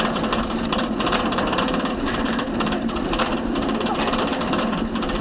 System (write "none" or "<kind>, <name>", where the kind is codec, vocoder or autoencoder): vocoder, BigVGAN v2